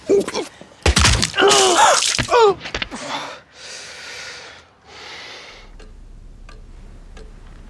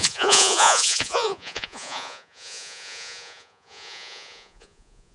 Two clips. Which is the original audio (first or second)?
first